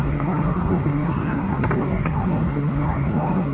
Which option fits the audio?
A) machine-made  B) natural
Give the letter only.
A